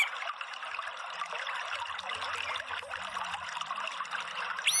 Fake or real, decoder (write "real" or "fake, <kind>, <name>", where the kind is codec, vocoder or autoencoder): real